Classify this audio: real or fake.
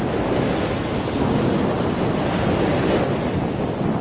real